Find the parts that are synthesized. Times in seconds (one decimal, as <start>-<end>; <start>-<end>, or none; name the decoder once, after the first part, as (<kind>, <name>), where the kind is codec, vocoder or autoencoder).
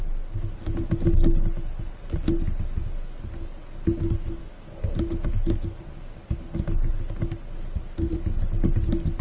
none